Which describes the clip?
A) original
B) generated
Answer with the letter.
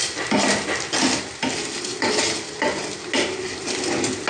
A